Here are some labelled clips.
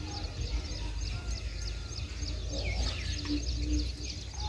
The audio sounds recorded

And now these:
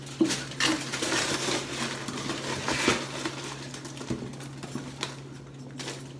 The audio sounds recorded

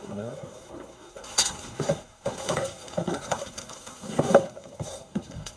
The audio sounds remade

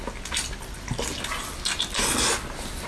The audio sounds recorded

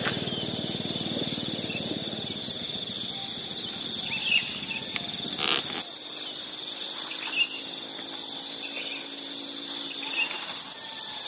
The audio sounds recorded